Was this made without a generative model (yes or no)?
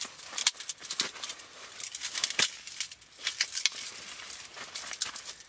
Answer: yes